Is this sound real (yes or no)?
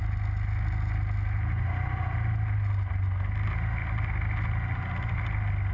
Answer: yes